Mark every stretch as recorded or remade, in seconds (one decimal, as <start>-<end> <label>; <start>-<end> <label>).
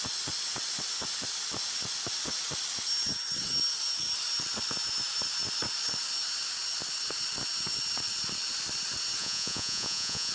0.0-9.2 recorded; 9.2-10.3 remade